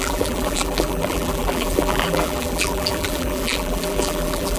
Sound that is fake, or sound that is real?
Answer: fake